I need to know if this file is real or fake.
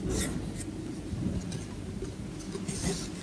real